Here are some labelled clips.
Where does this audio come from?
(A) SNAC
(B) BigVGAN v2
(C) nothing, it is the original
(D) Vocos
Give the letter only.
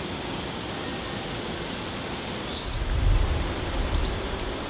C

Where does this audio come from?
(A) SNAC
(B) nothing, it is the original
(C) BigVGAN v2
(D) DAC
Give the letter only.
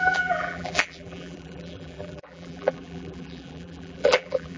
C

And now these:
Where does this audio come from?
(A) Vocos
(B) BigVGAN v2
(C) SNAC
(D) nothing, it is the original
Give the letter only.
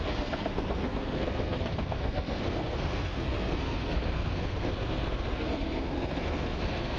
C